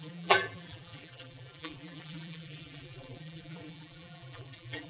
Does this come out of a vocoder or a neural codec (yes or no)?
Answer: yes